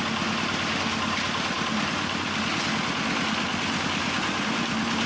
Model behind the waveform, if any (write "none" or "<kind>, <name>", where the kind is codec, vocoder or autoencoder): none